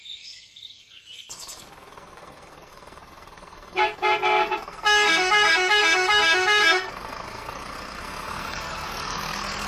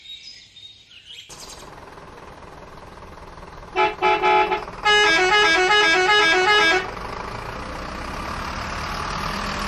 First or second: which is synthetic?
first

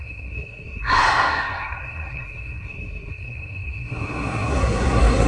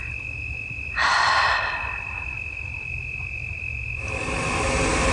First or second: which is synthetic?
first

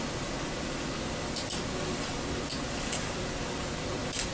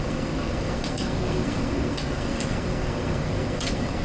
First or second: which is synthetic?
second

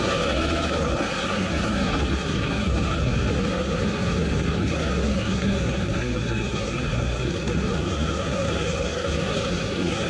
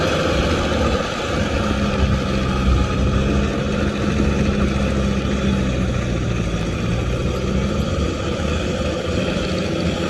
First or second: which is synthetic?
first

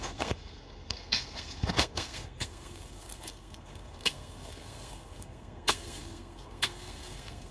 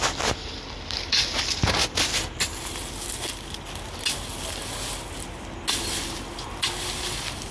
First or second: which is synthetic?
first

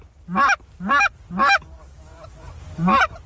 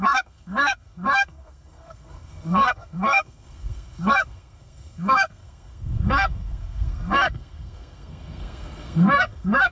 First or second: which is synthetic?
second